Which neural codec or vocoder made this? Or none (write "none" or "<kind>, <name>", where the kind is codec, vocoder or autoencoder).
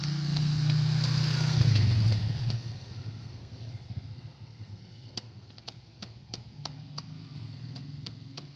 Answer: codec, SNAC